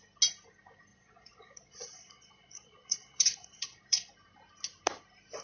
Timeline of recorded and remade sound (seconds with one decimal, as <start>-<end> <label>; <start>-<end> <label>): 0.0-0.9 recorded; 0.9-4.1 remade; 4.1-5.4 recorded